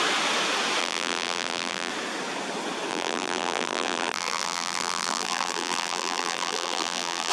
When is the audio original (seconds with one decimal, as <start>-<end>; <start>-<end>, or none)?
0.0-0.8; 1.9-2.9